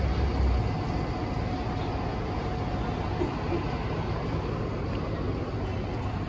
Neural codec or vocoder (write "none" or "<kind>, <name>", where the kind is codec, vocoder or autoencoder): none